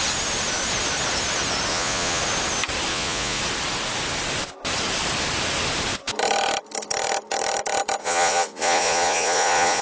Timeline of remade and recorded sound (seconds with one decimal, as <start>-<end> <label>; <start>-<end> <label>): 0.0-1.7 recorded; 1.7-2.2 remade; 2.2-2.9 recorded; 2.9-3.4 remade; 3.4-8.0 recorded; 8.0-9.8 remade